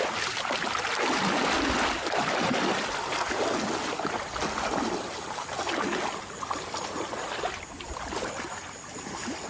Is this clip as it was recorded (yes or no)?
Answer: yes